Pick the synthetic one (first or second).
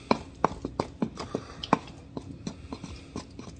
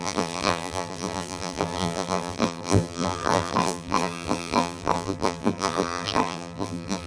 second